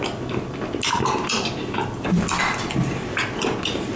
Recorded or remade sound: recorded